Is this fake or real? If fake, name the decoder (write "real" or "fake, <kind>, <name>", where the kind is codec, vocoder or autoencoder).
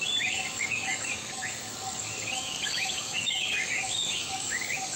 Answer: fake, codec, DAC